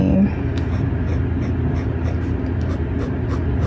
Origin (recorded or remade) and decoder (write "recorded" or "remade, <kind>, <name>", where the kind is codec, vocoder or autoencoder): recorded